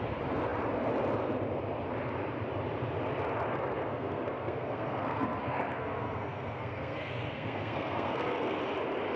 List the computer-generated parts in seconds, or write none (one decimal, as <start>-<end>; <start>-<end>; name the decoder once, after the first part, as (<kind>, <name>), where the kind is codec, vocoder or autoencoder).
3.5-8.6 (codec, SNAC)